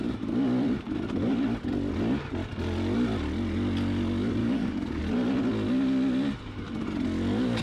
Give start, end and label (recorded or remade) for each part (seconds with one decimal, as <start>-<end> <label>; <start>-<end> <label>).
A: 0.0-4.4 recorded; 4.4-5.0 remade; 5.0-7.6 recorded